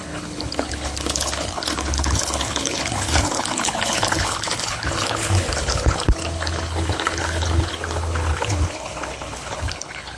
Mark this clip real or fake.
fake